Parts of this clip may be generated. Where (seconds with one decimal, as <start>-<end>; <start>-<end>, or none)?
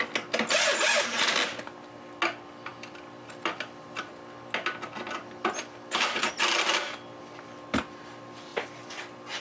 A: 2.7-4.1; 8.5-9.4